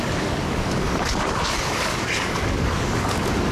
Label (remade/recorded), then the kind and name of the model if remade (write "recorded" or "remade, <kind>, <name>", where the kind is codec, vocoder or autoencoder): remade, codec, DAC